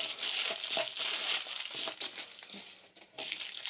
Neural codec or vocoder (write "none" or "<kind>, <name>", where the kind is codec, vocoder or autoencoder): none